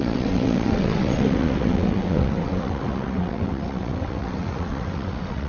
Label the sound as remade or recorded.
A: remade